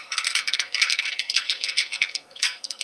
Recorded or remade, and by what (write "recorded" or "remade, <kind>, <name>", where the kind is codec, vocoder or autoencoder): remade, codec, SNAC